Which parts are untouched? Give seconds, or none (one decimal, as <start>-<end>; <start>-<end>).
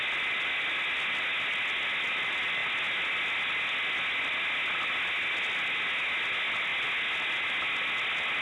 0.0-8.4